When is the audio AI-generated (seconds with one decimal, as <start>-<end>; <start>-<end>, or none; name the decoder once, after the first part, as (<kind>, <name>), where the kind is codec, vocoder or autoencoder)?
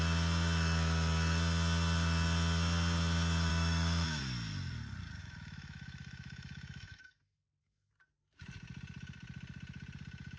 3.5-4.2 (autoencoder, DAC-VAE); 5.2-7.9